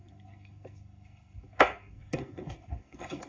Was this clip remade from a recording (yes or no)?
yes